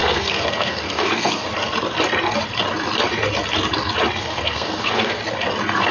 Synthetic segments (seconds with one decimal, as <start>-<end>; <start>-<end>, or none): 0.0-1.5; 4.2-5.2